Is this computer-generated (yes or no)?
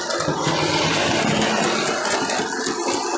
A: no